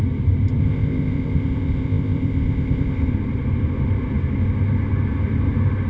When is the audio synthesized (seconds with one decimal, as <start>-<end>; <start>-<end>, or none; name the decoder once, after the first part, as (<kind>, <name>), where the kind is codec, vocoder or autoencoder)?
0.6-3.1 (codec, ZipCodec)